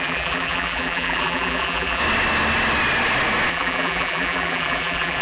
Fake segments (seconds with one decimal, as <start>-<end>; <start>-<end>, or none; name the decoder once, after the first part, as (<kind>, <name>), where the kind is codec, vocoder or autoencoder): 0.0-2.0 (vocoder, BigVGAN v2); 3.5-5.2